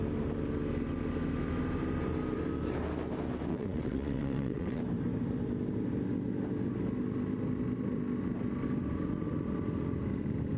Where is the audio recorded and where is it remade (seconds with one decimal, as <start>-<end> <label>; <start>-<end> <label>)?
0.0-3.5 recorded; 3.5-4.8 remade; 4.8-10.6 recorded